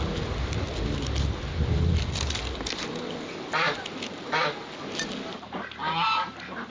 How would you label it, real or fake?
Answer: real